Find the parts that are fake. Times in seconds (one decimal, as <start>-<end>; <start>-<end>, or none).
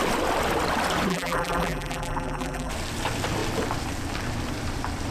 1.1-2.7